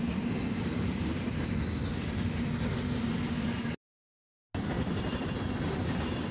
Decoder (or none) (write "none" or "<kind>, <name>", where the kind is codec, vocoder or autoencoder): none